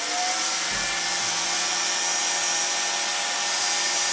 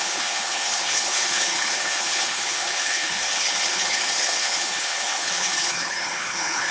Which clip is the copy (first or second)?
second